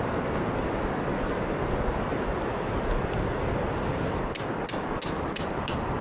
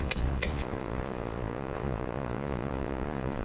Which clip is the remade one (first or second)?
second